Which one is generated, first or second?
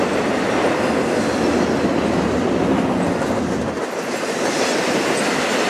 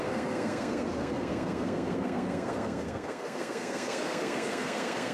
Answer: second